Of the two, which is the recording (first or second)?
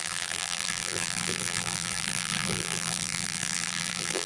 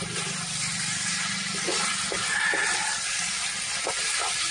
second